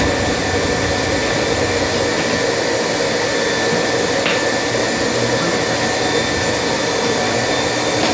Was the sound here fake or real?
real